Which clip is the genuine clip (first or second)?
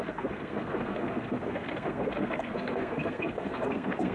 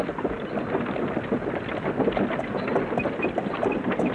second